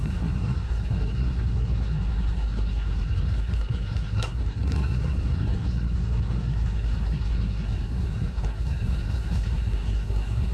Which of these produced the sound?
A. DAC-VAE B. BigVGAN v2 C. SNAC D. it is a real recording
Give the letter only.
C